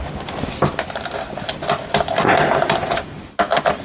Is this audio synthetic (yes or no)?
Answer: no